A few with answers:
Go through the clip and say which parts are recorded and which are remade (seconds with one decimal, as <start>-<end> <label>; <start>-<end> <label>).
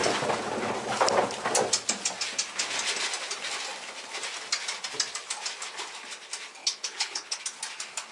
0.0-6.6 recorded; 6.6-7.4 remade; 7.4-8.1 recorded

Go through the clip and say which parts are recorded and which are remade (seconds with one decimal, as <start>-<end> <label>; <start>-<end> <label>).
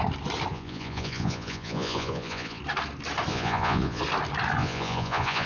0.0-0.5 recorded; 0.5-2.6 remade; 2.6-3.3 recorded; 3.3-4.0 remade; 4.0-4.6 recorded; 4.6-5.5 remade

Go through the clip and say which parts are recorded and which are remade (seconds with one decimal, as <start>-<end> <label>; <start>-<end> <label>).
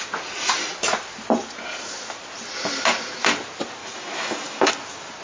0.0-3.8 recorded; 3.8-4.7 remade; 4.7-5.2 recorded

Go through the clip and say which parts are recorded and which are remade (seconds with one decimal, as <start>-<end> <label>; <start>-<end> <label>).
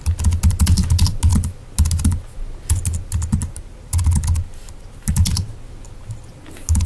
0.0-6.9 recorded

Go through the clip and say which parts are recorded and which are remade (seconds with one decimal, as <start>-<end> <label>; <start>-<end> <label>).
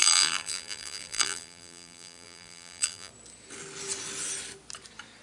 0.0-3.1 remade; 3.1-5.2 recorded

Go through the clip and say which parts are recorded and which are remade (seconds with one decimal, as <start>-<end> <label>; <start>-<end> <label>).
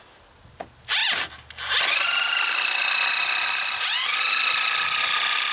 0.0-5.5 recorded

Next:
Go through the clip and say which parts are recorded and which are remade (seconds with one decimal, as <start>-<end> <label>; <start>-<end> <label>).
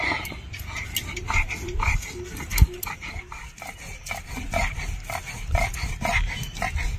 0.0-1.6 recorded; 1.6-2.1 remade; 2.1-7.0 recorded